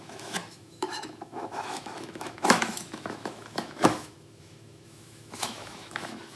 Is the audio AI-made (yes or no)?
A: yes